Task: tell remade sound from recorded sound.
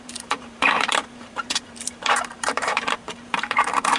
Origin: remade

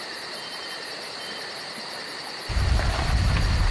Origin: remade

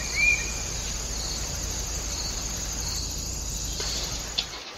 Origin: remade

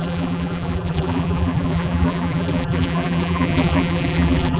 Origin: remade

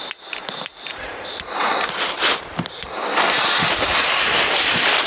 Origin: remade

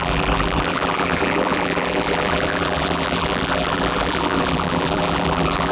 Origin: remade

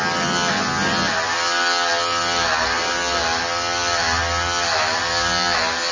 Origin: recorded